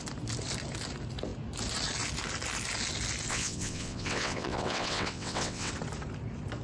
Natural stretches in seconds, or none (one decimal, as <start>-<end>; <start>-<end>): 0.0-3.3; 5.7-6.6